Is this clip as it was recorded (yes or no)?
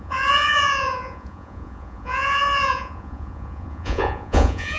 no